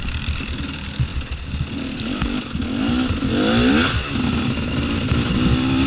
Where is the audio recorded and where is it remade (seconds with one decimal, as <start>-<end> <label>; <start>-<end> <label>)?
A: 0.0-5.9 recorded